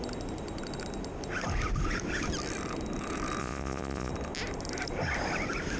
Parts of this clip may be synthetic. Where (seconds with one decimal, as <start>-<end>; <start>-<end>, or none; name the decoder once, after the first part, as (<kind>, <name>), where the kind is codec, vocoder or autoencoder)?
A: 3.4-4.1 (vocoder, Vocos)